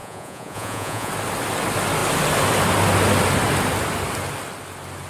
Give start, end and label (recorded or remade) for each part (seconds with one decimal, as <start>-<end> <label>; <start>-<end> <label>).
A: 0.0-1.1 remade; 1.1-5.1 recorded